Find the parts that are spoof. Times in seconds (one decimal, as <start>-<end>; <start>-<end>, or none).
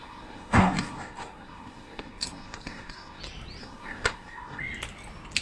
0.0-3.2; 3.6-4.6